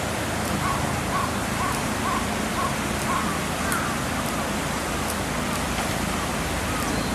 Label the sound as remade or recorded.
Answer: recorded